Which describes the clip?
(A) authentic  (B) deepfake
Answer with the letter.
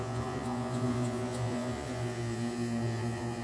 B